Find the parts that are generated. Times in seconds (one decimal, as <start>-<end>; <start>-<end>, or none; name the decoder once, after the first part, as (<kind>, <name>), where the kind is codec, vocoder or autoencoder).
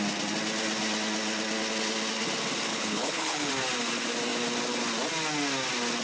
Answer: 2.7-3.5 (codec, HILCodec)